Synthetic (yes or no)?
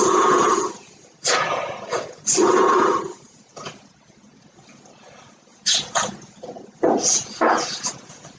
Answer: yes